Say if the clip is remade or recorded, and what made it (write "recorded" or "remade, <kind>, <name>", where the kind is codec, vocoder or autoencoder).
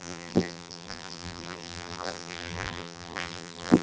remade, vocoder, BigVGAN v2